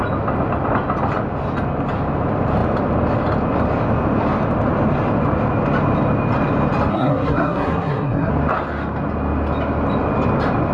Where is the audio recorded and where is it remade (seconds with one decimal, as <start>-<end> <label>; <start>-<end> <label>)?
0.0-6.9 recorded; 6.9-8.3 remade; 8.3-10.7 recorded